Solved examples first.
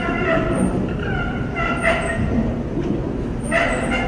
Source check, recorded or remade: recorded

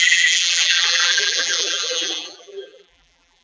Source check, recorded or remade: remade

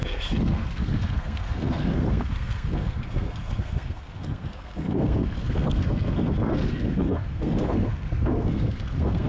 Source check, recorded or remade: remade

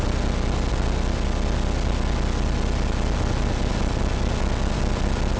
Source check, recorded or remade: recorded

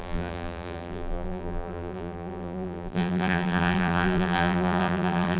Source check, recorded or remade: remade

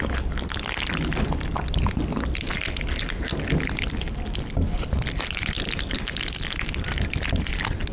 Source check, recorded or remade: recorded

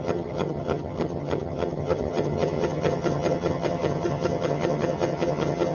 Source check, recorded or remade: remade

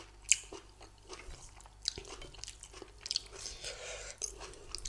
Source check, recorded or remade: recorded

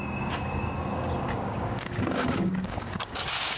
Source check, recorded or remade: remade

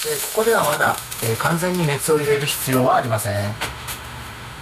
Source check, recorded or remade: remade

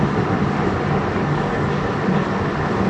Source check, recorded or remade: recorded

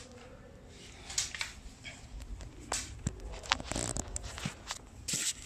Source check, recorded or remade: recorded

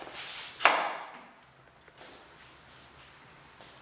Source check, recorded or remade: recorded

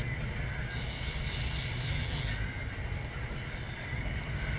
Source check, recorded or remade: recorded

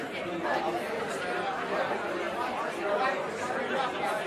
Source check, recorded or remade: recorded